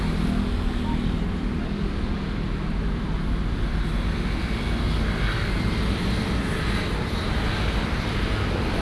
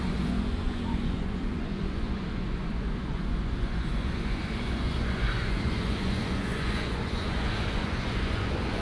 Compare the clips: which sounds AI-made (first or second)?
second